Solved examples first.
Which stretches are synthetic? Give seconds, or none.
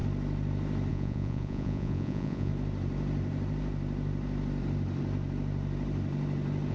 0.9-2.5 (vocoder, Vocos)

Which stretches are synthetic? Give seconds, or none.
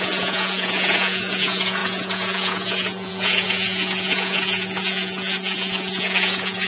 0.0-6.7 (vocoder, Vocos)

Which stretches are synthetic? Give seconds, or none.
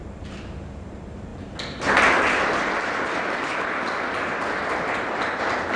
none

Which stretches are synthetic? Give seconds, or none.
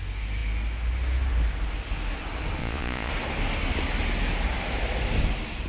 2.6-3.1 (vocoder, Vocos)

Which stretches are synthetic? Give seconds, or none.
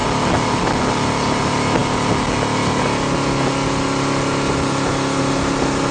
none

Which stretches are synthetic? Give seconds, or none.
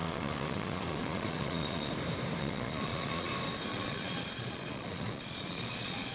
0.0-1.9 (vocoder, Vocos); 2.4-3.3; 3.7-6.1